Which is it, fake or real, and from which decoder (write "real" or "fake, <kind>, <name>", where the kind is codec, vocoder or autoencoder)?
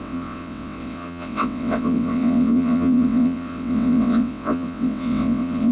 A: fake, vocoder, WaveNeXt